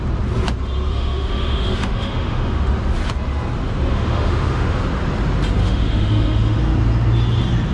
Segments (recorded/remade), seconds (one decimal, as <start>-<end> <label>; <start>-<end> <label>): 0.0-0.9 recorded; 0.9-2.7 remade; 2.7-3.9 recorded; 3.9-4.8 remade; 4.8-5.6 recorded; 5.6-6.6 remade; 6.6-7.7 recorded